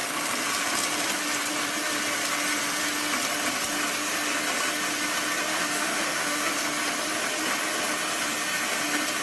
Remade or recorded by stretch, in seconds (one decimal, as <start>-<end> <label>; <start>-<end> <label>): 0.0-5.5 recorded; 5.5-6.5 remade; 6.5-9.2 recorded